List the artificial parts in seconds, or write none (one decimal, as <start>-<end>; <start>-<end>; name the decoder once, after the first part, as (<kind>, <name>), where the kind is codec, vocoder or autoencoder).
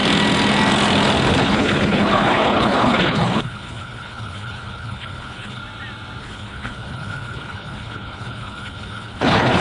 1.3-5.6 (codec, HILCodec); 6.2-9.6